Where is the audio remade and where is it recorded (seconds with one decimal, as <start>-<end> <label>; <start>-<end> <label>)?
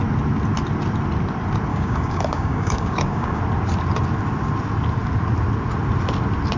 0.0-1.7 recorded; 1.7-3.4 remade; 3.4-6.6 recorded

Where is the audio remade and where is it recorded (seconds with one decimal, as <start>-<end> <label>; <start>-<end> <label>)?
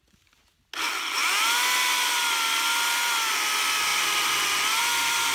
0.0-5.3 recorded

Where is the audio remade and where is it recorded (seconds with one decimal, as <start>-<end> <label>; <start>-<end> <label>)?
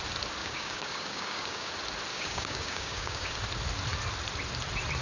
0.0-0.4 recorded; 0.4-1.7 remade; 1.7-2.1 recorded; 2.1-3.3 remade; 3.3-5.0 recorded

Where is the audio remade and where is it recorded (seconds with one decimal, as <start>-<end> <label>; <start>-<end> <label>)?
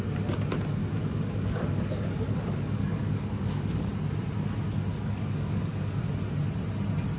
0.0-0.8 recorded; 0.8-3.9 remade; 3.9-4.9 recorded; 4.9-6.0 remade; 6.0-7.2 recorded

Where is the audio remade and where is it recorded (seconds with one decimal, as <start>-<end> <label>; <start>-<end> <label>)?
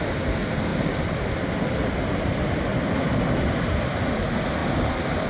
0.0-5.3 recorded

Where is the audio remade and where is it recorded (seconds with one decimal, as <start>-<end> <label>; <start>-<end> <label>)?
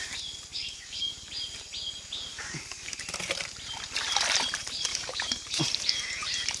0.0-0.5 recorded; 0.5-1.3 remade; 1.3-2.3 recorded; 2.3-3.0 remade; 3.0-4.9 recorded; 4.9-5.6 remade; 5.6-6.6 recorded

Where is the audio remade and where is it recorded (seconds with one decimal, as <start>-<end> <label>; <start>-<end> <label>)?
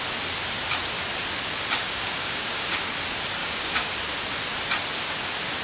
0.0-1.8 recorded; 1.8-2.9 remade; 2.9-3.4 recorded; 3.4-3.9 remade; 3.9-5.6 recorded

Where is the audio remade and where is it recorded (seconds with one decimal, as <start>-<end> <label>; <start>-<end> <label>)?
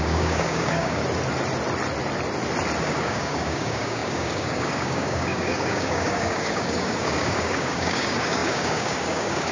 0.0-1.0 remade; 1.0-2.8 recorded; 2.8-9.5 remade